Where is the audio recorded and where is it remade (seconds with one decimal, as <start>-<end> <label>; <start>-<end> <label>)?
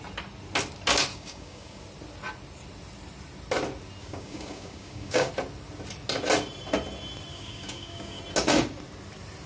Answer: 0.0-1.1 recorded; 1.1-1.8 remade; 1.8-4.0 recorded; 4.0-5.3 remade; 5.3-7.3 recorded; 7.3-8.2 remade; 8.2-9.5 recorded